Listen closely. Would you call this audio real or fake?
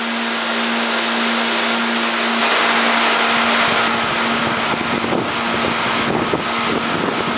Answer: real